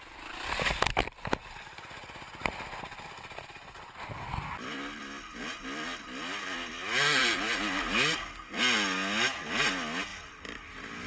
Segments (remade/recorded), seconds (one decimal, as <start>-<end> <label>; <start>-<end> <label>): 0.0-11.1 recorded